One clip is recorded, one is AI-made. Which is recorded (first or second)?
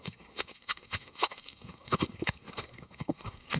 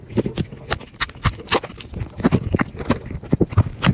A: second